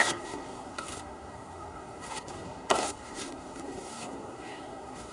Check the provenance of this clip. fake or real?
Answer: fake